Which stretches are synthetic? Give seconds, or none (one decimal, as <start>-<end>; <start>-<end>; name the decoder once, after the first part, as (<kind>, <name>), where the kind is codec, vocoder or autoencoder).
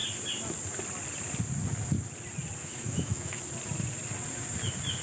2.6-3.4 (autoencoder, DAC-VAE)